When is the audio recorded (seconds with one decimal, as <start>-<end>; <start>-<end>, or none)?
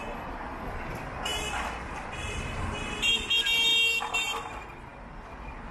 0.0-5.7